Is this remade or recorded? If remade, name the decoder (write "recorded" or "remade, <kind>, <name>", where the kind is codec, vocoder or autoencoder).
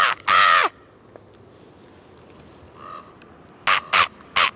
recorded